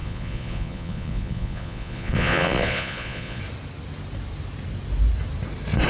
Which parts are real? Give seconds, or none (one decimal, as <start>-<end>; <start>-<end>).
3.4-5.9